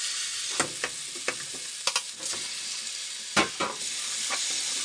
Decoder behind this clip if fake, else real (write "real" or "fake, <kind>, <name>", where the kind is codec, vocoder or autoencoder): real